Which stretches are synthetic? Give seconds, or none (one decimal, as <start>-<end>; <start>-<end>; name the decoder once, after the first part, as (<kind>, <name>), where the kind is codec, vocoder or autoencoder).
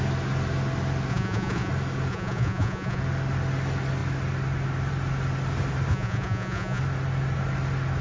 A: 1.1-1.7 (vocoder, Vocos); 2.1-3.0; 5.9-6.8